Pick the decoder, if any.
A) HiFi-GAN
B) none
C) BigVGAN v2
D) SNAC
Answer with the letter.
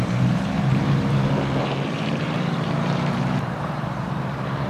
C